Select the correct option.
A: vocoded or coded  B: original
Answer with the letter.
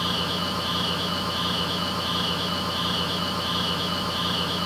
A